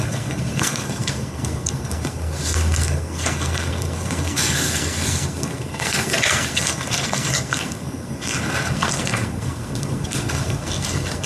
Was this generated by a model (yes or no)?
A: yes